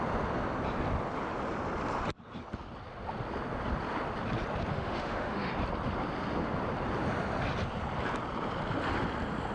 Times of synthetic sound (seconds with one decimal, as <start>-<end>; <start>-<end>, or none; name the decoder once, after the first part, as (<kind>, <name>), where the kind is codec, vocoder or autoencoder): 4.7-5.5 (autoencoder, DAC-VAE)